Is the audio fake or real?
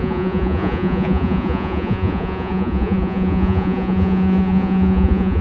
fake